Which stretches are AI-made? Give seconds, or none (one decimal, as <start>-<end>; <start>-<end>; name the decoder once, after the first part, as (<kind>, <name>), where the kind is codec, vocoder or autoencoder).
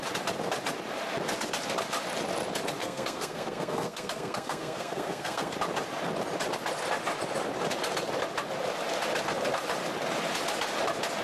2.8-5.5 (codec, SNAC)